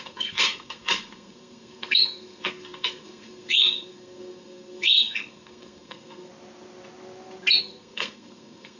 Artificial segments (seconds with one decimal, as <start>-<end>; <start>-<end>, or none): 0.0-6.3; 7.6-8.8